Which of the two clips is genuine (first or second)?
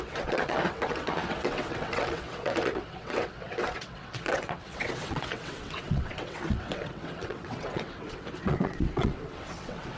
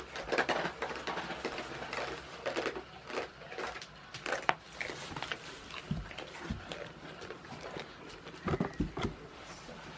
second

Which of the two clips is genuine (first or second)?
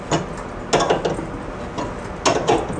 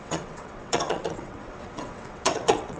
first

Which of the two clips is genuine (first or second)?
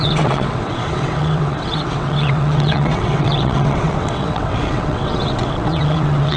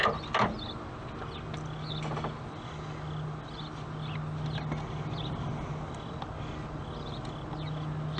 second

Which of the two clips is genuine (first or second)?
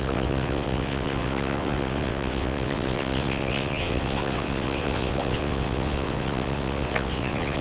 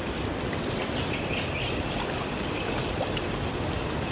second